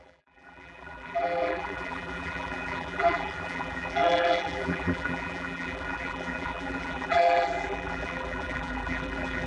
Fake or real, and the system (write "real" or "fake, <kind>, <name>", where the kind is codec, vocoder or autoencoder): fake, vocoder, BigVGAN v2